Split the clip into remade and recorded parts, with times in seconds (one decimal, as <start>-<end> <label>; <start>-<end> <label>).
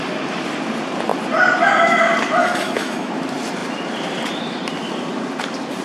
0.0-2.4 recorded; 2.4-3.1 remade; 3.1-5.8 recorded